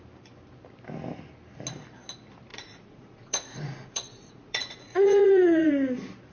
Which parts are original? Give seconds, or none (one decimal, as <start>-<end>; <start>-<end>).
0.0-2.5; 5.7-6.3